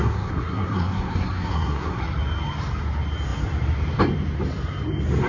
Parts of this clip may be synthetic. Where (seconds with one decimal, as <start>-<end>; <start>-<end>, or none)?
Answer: 0.0-2.0